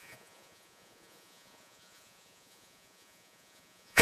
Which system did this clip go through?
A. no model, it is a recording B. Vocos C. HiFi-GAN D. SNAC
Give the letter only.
B